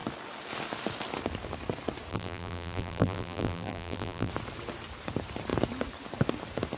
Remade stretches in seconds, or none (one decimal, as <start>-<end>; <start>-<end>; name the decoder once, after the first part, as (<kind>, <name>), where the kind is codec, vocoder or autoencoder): 2.1-4.3 (vocoder, BigVGAN v2)